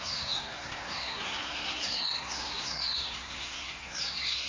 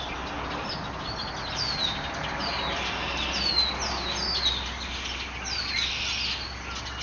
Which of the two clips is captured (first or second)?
second